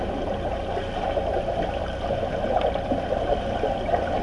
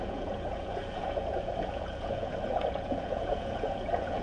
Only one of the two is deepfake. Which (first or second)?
second